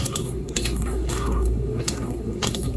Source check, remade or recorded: remade